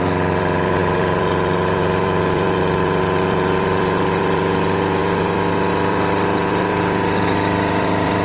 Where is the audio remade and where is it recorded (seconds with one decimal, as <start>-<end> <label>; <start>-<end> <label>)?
0.0-8.2 remade